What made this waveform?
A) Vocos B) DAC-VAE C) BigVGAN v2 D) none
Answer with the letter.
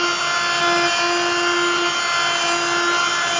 D